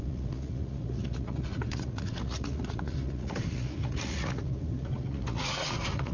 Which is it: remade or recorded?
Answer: remade